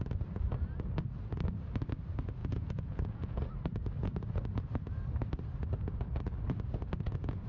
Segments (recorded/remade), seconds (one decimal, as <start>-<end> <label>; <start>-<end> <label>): 0.0-2.4 recorded; 2.4-3.4 remade; 3.4-7.5 recorded